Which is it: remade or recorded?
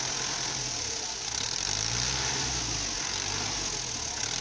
recorded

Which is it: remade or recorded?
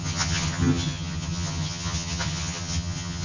remade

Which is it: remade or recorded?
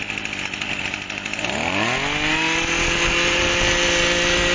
recorded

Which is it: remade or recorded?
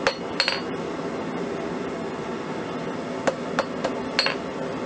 recorded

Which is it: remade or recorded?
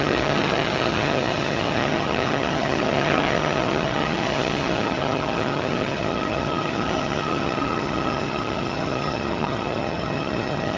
remade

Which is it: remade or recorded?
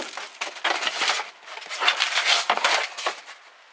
recorded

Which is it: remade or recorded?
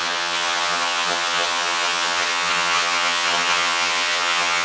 remade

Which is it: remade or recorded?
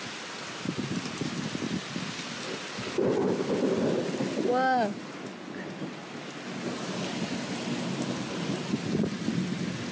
recorded